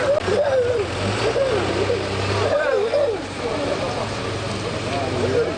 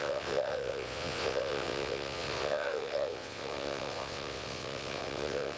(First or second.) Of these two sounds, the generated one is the second